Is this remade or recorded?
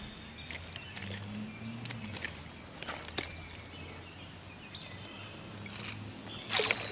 recorded